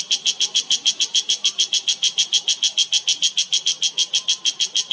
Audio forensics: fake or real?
real